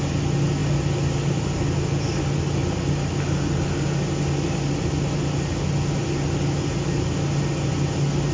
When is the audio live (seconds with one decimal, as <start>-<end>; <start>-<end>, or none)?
0.0-2.6; 5.6-8.3